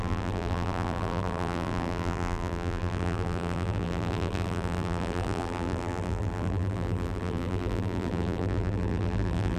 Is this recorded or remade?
remade